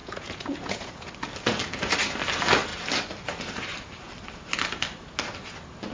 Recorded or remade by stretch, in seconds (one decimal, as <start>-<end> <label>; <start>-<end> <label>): 0.0-1.1 remade; 1.1-5.9 recorded